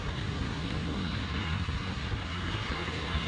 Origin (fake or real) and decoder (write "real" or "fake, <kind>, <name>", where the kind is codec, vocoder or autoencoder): fake, codec, SNAC